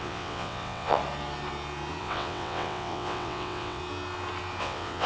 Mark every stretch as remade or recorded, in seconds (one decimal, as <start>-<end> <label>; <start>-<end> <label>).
0.0-1.0 remade; 1.0-2.0 recorded; 2.0-3.8 remade; 3.8-4.6 recorded; 4.6-5.1 remade